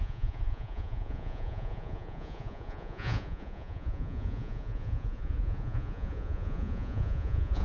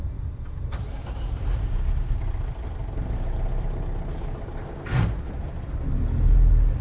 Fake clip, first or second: first